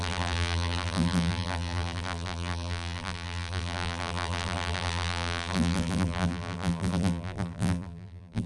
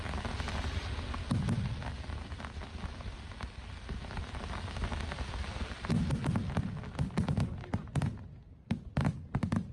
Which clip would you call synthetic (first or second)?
first